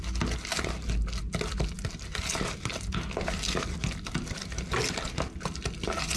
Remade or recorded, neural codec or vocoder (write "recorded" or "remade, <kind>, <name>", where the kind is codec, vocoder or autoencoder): recorded